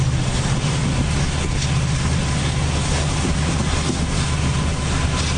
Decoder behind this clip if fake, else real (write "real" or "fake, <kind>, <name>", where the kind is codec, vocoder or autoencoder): real